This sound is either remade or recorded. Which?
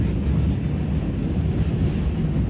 recorded